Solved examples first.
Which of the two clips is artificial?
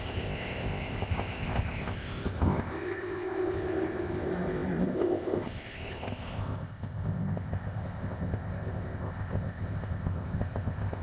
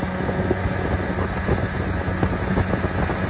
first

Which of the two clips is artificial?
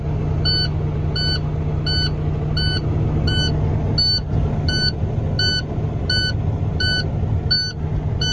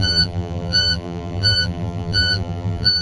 second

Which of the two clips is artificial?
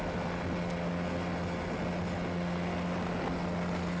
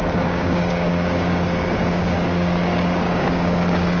second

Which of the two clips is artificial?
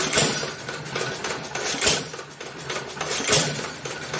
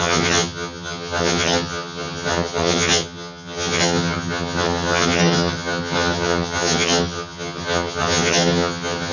second